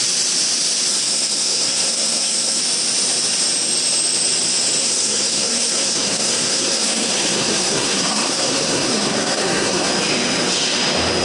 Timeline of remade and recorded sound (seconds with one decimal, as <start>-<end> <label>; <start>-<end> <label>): 0.0-0.9 recorded; 0.9-2.6 remade; 2.6-4.8 recorded; 4.8-9.9 remade; 9.9-11.2 recorded

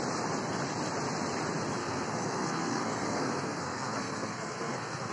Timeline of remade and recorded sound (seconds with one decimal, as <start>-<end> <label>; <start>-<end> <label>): 0.0-1.8 recorded; 1.8-5.1 remade

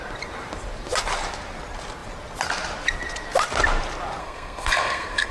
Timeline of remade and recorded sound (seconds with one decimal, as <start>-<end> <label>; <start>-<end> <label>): 0.0-4.2 recorded; 4.2-5.3 remade

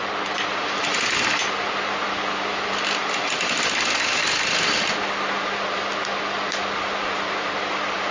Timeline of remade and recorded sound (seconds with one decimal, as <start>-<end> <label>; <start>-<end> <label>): 0.0-8.1 recorded

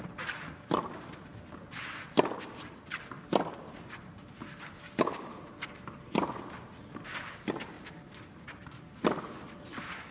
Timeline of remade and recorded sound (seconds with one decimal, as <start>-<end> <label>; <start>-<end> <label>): 0.0-10.1 recorded

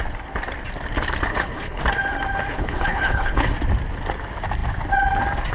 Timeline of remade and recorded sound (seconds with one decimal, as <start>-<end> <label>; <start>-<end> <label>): 0.0-1.3 recorded; 1.3-1.8 remade; 1.8-2.5 recorded; 2.5-3.5 remade; 3.5-5.5 recorded

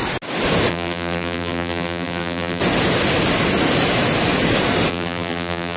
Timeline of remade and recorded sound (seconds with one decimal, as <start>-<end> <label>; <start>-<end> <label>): 0.0-0.7 recorded; 0.7-2.6 remade; 2.6-4.9 recorded; 4.9-5.8 remade